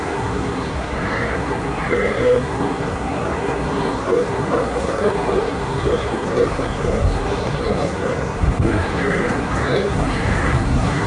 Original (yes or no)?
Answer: no